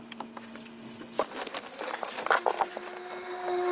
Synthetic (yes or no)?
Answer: no